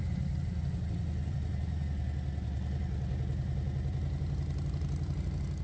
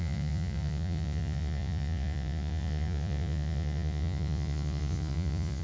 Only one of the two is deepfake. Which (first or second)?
second